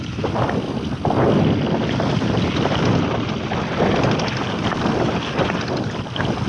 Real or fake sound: real